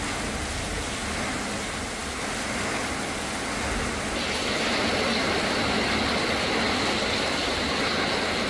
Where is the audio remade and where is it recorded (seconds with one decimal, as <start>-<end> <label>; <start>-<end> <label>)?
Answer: 0.0-8.5 recorded